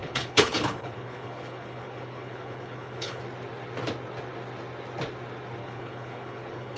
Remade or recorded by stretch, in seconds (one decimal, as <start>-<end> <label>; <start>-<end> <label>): 0.0-3.2 remade; 3.2-5.6 recorded; 5.6-6.8 remade